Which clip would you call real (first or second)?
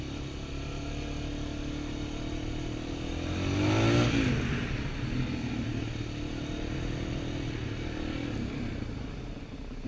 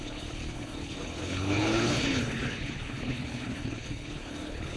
first